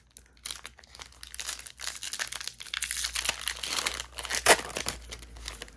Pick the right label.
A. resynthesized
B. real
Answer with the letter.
B